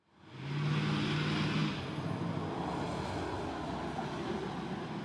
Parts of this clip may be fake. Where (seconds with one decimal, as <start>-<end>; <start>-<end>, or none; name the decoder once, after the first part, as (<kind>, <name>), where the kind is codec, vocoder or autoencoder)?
none